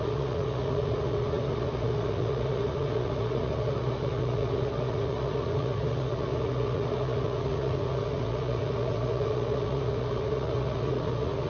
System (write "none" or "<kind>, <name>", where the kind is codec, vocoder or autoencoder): vocoder, Vocos